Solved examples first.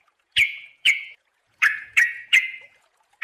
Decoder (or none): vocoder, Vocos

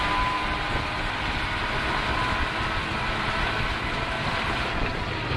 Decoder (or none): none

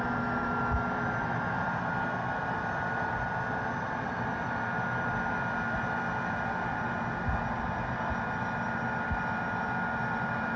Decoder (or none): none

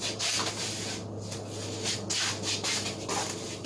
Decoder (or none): none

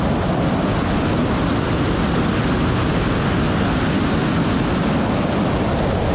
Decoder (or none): none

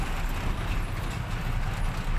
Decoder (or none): none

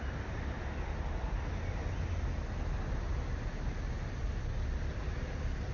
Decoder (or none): none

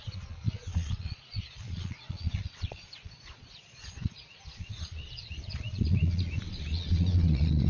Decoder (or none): vocoder, Vocos